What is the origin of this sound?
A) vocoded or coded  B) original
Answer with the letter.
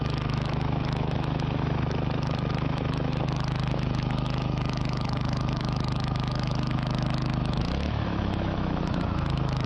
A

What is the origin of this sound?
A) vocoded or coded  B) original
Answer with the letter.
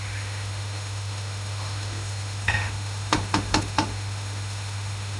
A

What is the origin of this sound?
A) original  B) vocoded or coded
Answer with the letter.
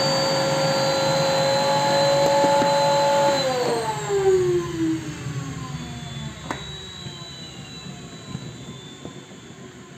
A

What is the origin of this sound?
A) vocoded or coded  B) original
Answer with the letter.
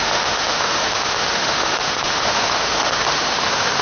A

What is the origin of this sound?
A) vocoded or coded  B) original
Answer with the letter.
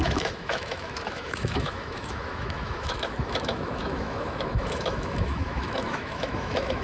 A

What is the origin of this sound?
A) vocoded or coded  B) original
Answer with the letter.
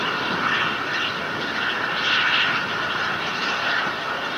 B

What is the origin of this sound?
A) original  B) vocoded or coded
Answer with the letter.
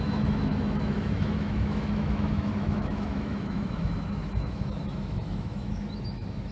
B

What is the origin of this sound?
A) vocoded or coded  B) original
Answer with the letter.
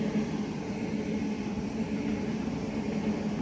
B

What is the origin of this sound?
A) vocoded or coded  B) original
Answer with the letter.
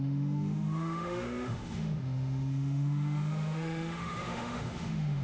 A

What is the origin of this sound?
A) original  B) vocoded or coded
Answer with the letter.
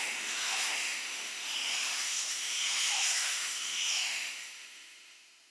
B